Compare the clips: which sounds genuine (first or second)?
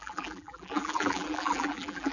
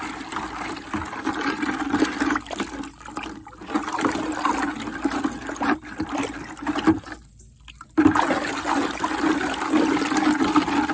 second